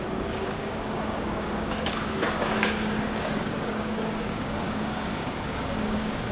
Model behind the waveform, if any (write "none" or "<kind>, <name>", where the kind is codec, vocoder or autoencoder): codec, DAC